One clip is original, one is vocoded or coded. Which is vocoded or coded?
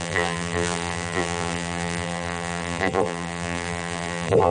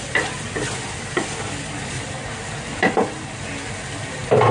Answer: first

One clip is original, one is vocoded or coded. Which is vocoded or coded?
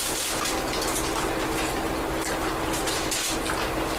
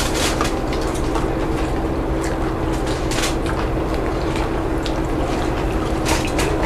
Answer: second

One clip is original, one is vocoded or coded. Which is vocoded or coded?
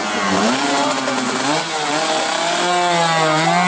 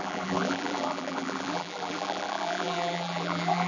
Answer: second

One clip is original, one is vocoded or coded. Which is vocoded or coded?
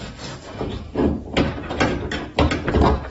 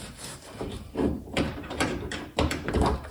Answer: second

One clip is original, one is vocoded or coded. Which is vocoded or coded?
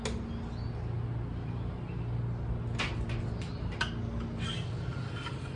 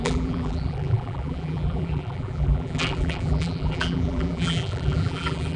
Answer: second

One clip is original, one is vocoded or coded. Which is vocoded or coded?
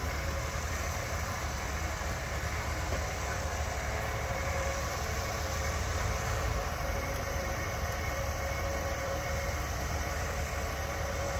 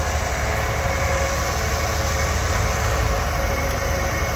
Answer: first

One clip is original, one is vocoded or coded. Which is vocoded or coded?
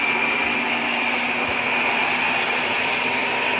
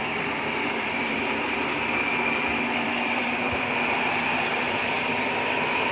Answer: second